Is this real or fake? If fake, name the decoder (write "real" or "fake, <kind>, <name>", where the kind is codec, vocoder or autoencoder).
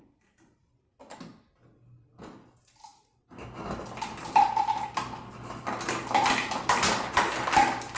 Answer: real